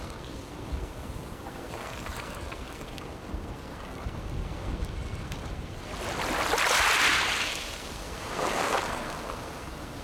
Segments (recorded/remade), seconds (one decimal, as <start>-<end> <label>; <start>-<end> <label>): 0.0-5.9 remade; 5.9-7.4 recorded; 7.4-10.0 remade